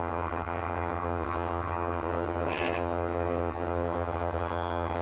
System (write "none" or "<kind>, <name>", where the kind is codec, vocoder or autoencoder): vocoder, HiFi-GAN